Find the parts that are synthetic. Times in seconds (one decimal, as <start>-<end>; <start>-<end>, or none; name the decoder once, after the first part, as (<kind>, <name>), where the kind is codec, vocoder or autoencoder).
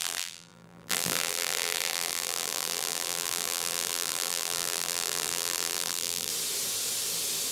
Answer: 0.0-6.3 (vocoder, BigVGAN v2)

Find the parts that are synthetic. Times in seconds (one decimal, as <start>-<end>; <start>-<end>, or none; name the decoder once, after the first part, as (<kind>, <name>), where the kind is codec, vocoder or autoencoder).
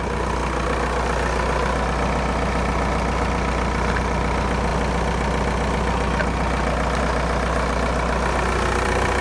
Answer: none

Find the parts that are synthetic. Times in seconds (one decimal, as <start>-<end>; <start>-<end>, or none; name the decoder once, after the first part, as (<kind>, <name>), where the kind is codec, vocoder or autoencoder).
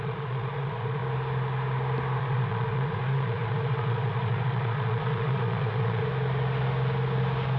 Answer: 0.0-1.0 (vocoder, Vocos); 2.2-6.0